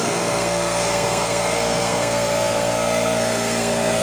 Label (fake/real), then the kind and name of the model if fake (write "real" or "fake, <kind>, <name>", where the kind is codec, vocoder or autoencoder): fake, codec, SNAC